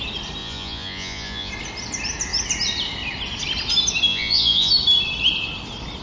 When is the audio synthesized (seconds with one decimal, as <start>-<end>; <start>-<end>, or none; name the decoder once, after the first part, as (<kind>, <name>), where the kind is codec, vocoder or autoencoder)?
0.4-1.5 (vocoder, Vocos); 4.1-4.7